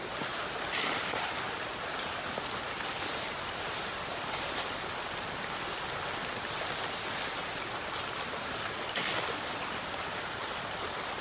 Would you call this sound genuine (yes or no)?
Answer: yes